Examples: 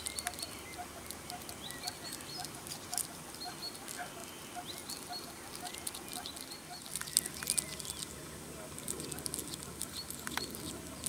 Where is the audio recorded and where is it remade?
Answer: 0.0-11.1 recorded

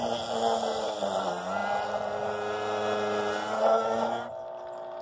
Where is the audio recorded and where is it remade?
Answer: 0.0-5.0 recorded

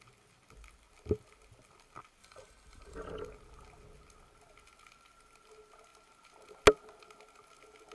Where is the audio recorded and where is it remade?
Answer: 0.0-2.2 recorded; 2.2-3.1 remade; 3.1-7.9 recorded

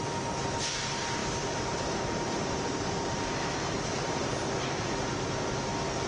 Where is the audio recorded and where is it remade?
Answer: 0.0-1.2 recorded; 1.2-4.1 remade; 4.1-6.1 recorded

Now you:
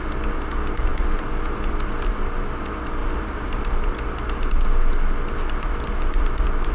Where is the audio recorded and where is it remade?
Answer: 0.0-3.0 recorded; 3.0-3.6 remade; 3.6-6.7 recorded

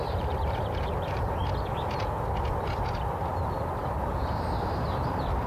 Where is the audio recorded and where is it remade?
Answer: 0.0-1.4 remade; 1.4-3.3 recorded; 3.3-5.5 remade